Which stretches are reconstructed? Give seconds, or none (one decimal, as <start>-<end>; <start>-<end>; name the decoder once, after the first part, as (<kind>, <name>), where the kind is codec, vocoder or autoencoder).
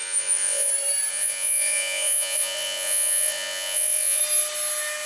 0.0-0.7 (vocoder, Vocos); 1.1-4.2